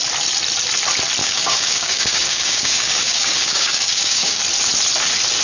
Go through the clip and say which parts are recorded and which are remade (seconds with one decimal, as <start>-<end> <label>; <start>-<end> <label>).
0.0-1.2 recorded; 1.2-4.4 remade; 4.4-5.4 recorded

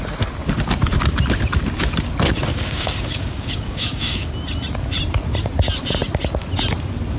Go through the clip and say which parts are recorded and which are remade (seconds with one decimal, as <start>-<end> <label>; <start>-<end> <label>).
0.0-2.5 recorded; 2.5-4.3 remade; 4.3-7.2 recorded